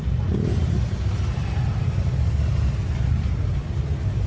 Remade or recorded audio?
recorded